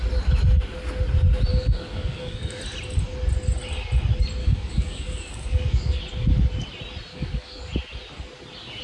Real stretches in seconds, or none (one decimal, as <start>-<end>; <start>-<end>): 0.0-1.5; 2.6-4.4; 6.0-7.1; 7.7-8.8